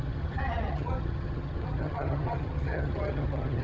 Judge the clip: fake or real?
fake